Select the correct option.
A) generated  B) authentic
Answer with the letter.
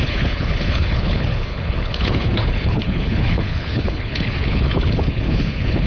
A